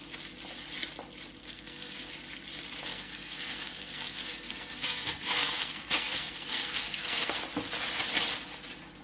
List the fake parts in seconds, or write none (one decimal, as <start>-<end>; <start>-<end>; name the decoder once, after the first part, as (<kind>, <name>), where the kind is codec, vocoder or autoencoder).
1.4-2.1 (codec, SNAC); 2.9-7.4